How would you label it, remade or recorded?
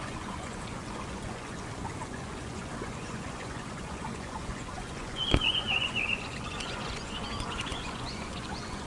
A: remade